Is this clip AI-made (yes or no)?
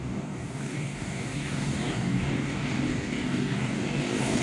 yes